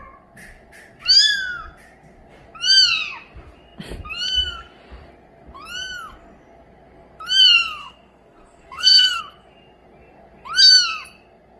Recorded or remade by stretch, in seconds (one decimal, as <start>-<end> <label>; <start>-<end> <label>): 0.0-7.8 recorded; 7.8-9.2 remade; 9.2-11.6 recorded